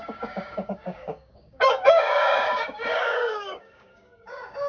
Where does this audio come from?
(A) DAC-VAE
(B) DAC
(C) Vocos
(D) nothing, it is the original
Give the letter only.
B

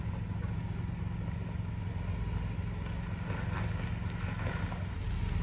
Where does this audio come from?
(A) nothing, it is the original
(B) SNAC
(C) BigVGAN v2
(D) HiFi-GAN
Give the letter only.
A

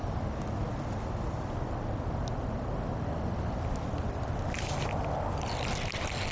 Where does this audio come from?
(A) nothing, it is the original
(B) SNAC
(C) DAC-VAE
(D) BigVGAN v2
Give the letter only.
A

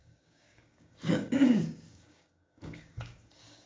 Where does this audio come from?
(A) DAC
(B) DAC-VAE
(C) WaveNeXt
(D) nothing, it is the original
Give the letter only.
A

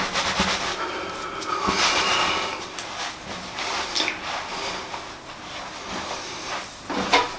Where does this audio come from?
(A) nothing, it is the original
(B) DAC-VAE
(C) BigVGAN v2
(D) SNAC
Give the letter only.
A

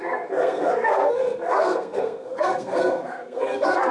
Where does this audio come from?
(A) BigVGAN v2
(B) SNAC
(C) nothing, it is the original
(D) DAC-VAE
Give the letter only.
B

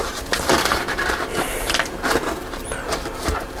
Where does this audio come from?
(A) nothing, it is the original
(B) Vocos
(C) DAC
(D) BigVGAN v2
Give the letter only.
D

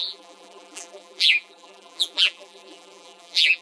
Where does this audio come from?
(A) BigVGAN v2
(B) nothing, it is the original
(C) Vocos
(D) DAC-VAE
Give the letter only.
A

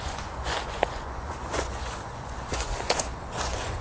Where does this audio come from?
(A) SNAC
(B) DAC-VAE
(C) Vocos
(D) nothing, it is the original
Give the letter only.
C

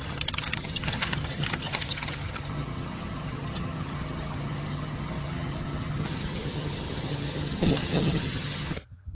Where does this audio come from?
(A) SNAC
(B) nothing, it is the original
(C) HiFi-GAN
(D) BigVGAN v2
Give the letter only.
C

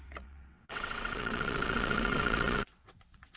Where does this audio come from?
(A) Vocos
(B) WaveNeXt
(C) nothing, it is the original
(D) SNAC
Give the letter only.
B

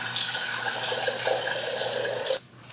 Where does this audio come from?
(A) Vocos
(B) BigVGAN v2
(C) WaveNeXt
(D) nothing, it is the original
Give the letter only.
D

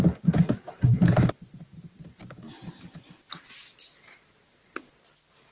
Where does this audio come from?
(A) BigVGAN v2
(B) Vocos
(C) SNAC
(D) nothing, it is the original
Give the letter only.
A